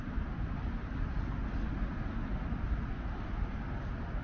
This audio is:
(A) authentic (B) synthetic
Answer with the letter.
A